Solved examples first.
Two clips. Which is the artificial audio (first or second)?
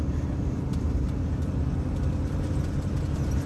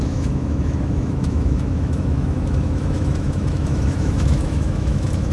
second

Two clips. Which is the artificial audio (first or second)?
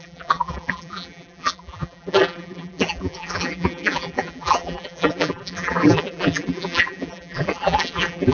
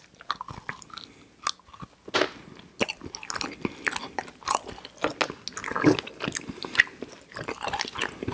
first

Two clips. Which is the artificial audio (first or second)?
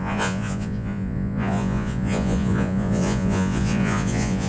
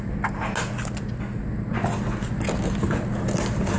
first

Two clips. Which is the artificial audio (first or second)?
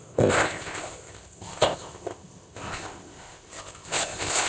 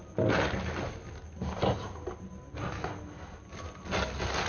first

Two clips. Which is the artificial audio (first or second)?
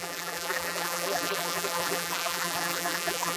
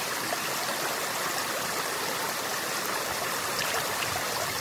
first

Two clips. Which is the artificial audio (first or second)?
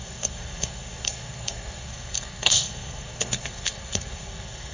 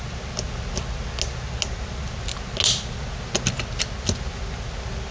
first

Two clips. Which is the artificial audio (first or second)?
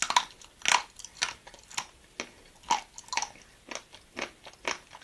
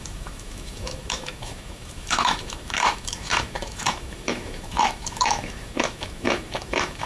second